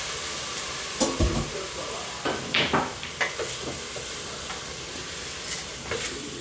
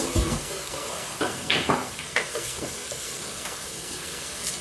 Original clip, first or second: first